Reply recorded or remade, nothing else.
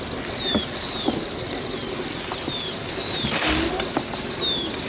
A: recorded